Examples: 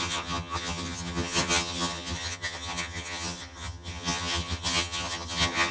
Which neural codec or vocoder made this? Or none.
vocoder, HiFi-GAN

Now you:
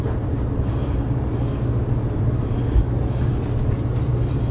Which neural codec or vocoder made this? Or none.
none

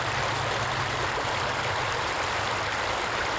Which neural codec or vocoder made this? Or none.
none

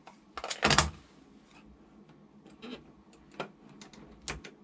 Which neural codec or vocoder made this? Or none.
none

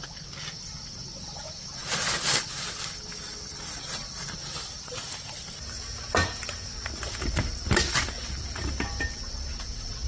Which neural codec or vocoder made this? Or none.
none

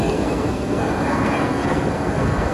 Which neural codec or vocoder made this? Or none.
codec, SNAC